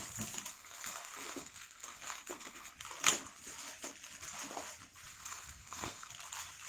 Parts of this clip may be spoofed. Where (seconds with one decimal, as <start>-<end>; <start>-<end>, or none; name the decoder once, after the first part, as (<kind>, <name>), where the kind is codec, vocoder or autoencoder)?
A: 0.5-2.7 (codec, SNAC); 5.1-6.1

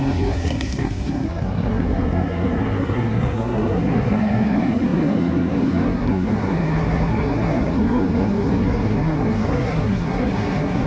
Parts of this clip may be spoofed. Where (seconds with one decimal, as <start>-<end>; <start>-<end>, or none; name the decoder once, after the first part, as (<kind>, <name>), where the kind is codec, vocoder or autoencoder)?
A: 0.0-10.9 (codec, SNAC)

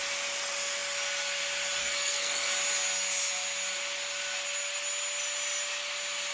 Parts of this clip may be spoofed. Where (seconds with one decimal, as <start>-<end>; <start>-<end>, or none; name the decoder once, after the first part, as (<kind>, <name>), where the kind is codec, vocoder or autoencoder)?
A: 1.8-2.5 (codec, SNAC)

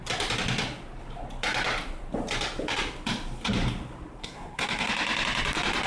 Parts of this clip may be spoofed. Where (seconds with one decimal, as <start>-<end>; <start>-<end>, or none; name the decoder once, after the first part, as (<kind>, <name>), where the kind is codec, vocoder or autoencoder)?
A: 4.2-4.9 (codec, SNAC)